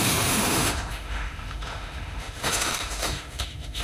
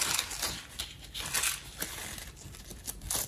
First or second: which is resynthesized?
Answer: first